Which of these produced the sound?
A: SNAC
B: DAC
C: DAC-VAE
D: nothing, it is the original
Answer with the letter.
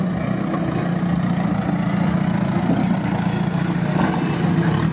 D